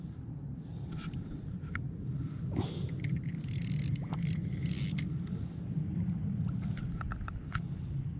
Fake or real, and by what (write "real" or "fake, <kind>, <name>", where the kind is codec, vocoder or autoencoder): real